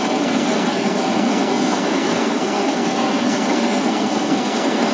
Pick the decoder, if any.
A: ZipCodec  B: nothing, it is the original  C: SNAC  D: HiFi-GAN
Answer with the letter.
C